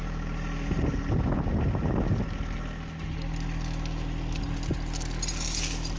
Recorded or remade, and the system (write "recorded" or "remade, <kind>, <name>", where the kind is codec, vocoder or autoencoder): recorded